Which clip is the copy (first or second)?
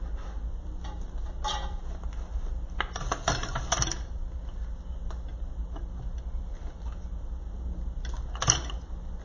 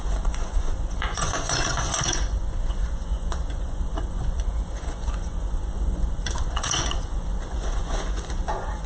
second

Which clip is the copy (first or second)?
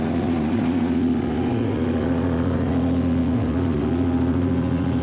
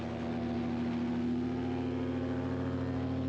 first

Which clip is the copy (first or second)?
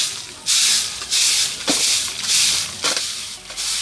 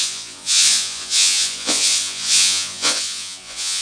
second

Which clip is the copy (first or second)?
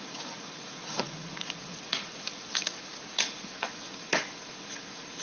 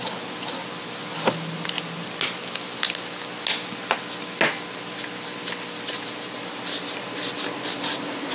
first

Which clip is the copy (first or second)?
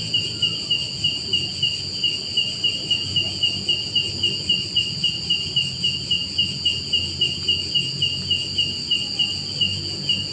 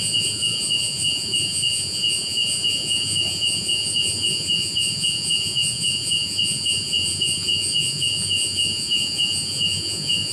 second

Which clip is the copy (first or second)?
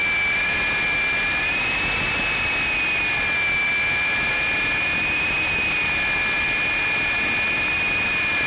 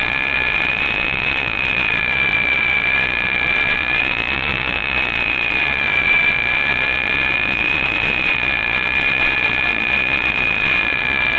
second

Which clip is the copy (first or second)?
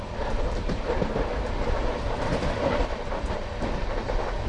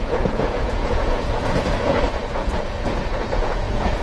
second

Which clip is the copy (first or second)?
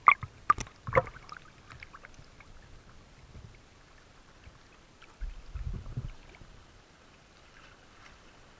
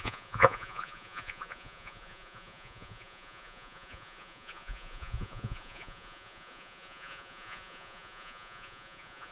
second